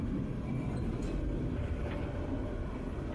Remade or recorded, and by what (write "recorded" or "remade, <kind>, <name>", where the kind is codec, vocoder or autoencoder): recorded